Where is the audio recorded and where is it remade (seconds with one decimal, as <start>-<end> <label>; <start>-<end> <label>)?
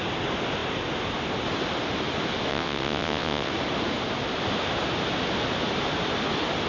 0.0-2.5 recorded; 2.5-3.5 remade; 3.5-6.7 recorded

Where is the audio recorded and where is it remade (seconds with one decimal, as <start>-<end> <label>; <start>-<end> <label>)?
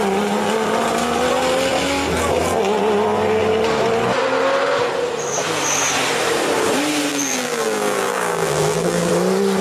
0.0-7.1 recorded; 7.1-9.1 remade; 9.1-9.6 recorded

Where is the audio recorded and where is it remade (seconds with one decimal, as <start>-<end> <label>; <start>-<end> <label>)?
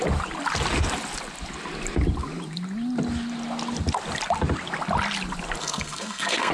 0.0-5.6 recorded; 5.6-6.5 remade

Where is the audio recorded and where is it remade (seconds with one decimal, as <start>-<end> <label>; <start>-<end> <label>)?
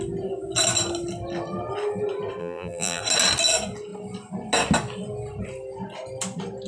0.0-2.4 recorded; 2.4-3.0 remade; 3.0-6.7 recorded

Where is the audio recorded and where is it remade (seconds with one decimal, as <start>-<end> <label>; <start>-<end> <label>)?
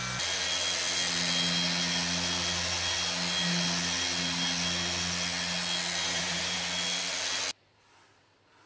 0.0-6.0 recorded; 6.0-6.6 remade; 6.6-8.7 recorded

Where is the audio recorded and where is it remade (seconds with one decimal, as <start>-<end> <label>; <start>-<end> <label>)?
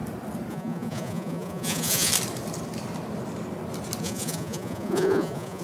0.0-0.5 recorded; 0.5-2.1 remade; 2.1-4.0 recorded; 4.0-5.6 remade